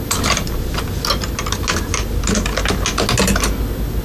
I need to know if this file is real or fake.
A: real